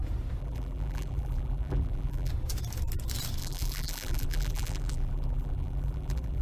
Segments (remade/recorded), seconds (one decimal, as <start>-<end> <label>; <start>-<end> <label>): 0.0-0.4 recorded; 0.4-2.3 remade; 2.3-3.4 recorded; 3.4-6.4 remade